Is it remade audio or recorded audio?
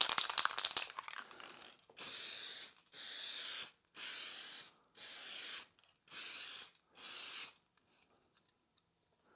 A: recorded